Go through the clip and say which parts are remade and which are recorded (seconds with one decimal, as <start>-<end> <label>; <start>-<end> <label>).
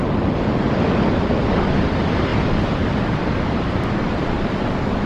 0.0-5.1 recorded